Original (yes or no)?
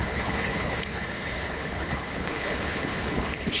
no